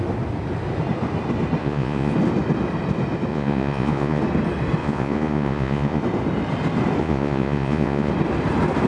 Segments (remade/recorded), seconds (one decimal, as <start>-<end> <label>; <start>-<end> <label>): 0.0-1.6 recorded; 1.6-2.1 remade; 2.1-3.3 recorded; 3.3-4.2 remade; 4.2-4.8 recorded; 4.8-6.0 remade; 6.0-7.0 recorded; 7.0-8.1 remade; 8.1-8.9 recorded